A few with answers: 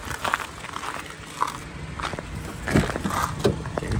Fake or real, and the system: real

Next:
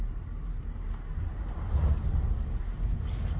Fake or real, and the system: real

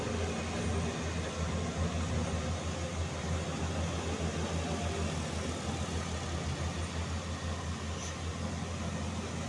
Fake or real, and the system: real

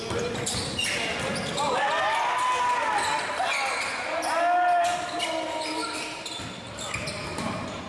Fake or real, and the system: real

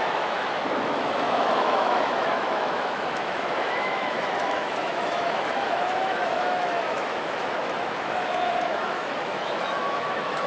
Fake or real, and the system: fake, autoencoder, DAC-VAE